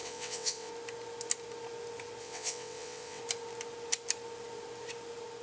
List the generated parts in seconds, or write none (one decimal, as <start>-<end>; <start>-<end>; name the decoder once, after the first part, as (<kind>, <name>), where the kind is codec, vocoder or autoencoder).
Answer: 0.0-0.7 (vocoder, WaveNeXt); 2.2-3.2